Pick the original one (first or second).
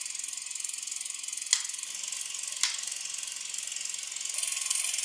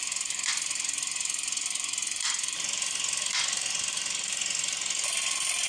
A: first